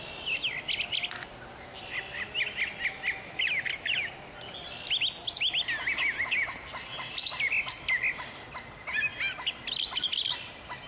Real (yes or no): yes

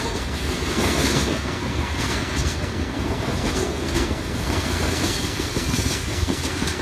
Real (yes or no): no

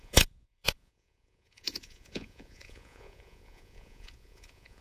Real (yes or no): no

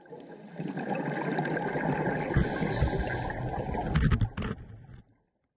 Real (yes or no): yes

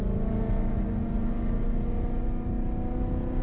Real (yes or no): yes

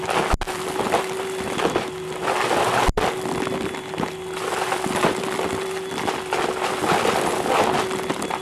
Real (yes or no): yes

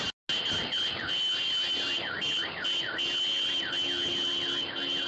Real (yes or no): yes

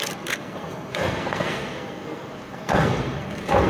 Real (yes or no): no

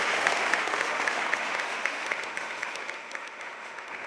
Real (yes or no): no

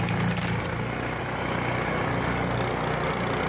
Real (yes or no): yes